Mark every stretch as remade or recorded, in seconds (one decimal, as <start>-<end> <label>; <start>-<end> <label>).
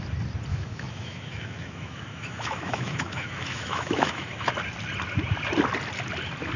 0.0-0.5 recorded; 0.5-4.5 remade; 4.5-6.6 recorded